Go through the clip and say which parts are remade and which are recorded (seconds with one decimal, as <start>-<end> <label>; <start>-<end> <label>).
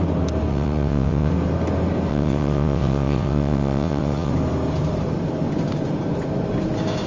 0.0-0.5 recorded; 0.5-1.3 remade; 1.3-2.1 recorded; 2.1-4.3 remade; 4.3-7.1 recorded